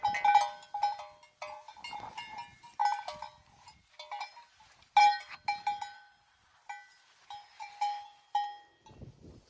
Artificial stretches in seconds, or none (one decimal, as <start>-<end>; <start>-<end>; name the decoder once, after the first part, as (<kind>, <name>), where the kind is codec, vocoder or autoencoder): none